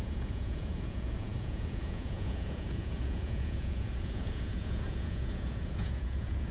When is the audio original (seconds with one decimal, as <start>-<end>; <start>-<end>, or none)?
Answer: none